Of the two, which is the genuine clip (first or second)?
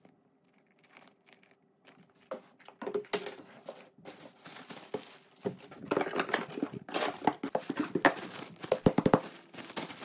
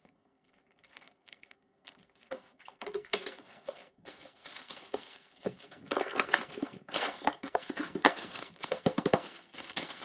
first